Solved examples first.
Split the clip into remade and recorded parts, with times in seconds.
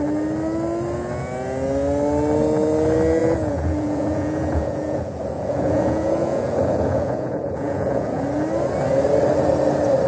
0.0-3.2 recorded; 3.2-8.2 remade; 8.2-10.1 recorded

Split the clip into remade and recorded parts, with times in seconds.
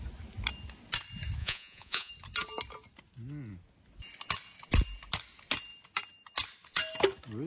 0.0-1.4 recorded; 1.4-2.1 remade; 2.1-7.5 recorded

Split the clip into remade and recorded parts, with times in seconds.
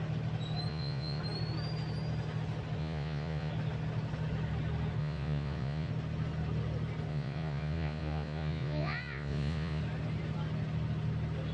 0.0-0.7 recorded; 0.7-1.2 remade; 1.2-2.8 recorded; 2.8-3.5 remade; 3.5-5.0 recorded; 5.0-5.9 remade; 5.9-7.1 recorded; 7.1-9.8 remade; 9.8-11.5 recorded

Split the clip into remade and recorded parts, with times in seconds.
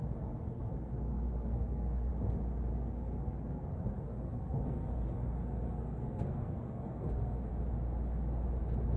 0.0-2.1 remade; 2.1-2.7 recorded; 2.7-7.5 remade; 7.5-9.0 recorded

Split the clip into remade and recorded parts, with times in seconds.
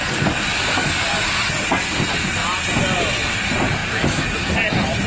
0.0-5.1 recorded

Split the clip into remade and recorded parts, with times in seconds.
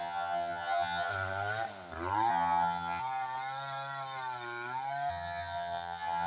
0.0-1.1 remade; 1.1-2.3 recorded; 2.3-3.0 remade; 3.0-5.1 recorded; 5.1-6.3 remade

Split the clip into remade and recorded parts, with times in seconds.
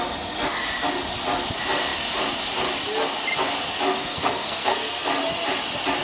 0.0-4.0 recorded; 4.0-5.1 remade; 5.1-6.0 recorded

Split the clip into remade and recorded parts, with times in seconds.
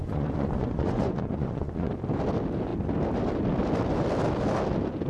0.0-1.9 remade; 1.9-5.1 recorded